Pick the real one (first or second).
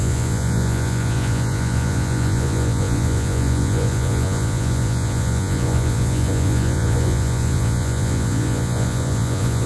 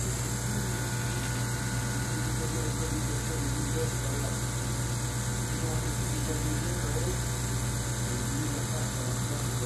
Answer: second